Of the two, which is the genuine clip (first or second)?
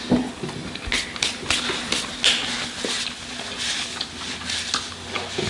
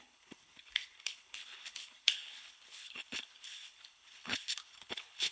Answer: first